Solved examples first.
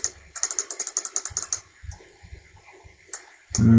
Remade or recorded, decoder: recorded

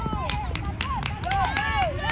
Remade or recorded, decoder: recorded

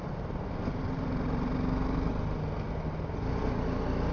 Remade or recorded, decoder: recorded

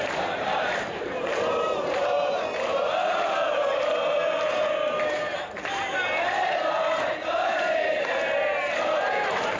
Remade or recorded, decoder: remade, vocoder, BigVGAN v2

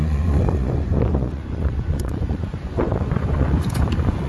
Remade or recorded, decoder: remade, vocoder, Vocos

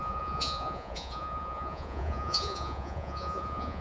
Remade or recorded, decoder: remade, vocoder, Vocos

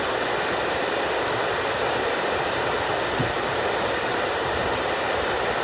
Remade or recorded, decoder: remade, vocoder, BigVGAN v2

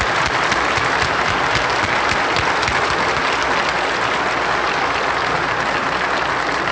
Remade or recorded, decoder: recorded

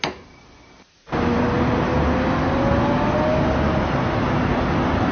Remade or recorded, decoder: recorded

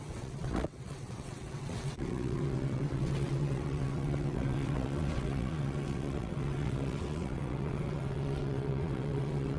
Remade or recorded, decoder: remade, vocoder, WaveNeXt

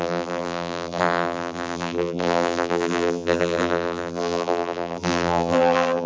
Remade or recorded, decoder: remade, vocoder, BigVGAN v2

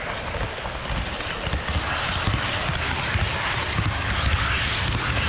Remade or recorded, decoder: recorded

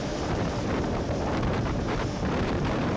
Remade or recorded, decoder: remade, vocoder, BigVGAN v2